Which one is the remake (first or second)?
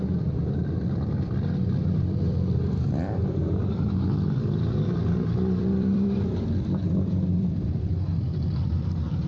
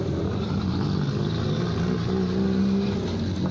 first